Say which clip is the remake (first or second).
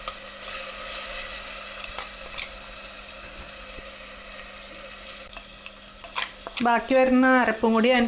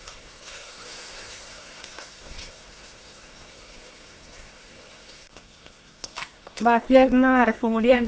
second